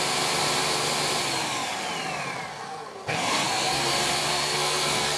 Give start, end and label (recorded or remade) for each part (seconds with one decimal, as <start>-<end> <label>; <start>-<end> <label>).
0.0-2.5 recorded; 2.5-3.9 remade; 3.9-4.3 recorded; 4.3-5.2 remade